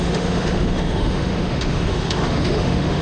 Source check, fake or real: fake